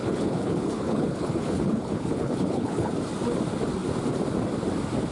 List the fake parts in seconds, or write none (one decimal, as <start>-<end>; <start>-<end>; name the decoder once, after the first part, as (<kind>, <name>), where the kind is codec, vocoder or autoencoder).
0.0-2.9 (codec, HILCodec)